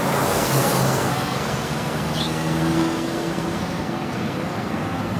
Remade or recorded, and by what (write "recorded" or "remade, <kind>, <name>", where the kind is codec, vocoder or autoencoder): remade, codec, SNAC